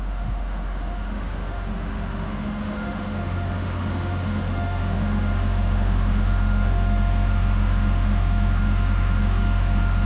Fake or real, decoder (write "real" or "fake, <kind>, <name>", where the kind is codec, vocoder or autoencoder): fake, autoencoder, DAC-VAE